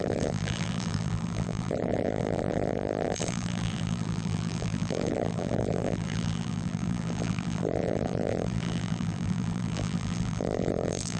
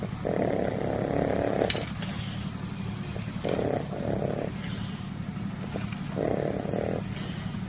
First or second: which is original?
second